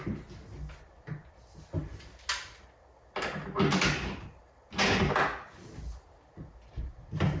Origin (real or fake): real